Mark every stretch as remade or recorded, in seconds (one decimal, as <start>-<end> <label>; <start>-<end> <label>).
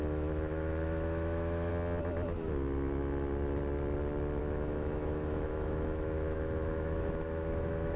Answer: 0.0-1.7 remade; 1.7-4.4 recorded; 4.4-8.0 remade